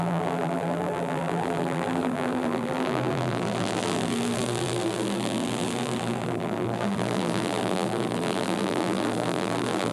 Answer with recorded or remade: remade